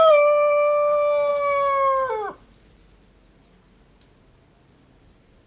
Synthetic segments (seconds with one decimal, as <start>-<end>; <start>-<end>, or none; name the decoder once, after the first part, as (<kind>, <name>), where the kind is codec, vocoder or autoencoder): none